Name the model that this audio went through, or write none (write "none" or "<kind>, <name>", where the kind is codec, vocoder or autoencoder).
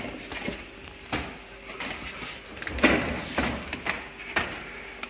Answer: none